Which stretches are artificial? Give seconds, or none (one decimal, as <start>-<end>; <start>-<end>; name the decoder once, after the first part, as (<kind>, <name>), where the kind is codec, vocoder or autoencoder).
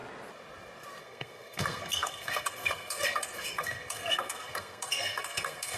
1.0-5.8 (codec, SNAC)